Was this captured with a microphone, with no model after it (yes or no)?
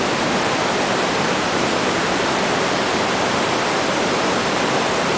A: yes